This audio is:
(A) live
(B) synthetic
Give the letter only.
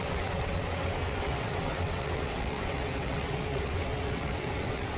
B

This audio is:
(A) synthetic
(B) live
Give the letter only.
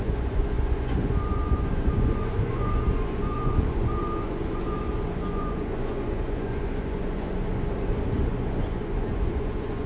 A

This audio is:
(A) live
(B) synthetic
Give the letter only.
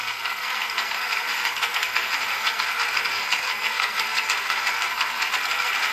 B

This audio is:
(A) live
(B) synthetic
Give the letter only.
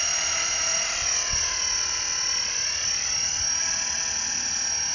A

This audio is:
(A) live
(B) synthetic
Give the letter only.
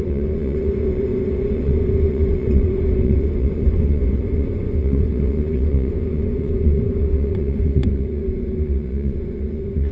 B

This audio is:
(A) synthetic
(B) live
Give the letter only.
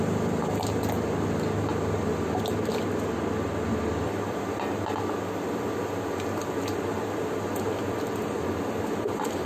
B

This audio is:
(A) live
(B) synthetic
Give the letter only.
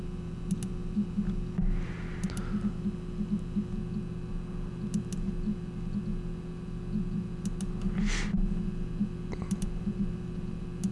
A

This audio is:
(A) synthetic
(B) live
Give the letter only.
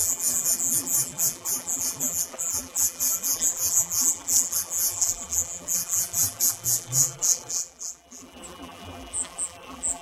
A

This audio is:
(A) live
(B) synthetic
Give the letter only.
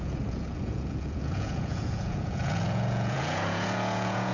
B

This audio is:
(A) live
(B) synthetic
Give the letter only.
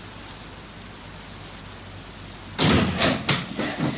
A